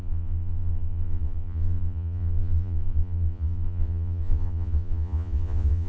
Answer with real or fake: fake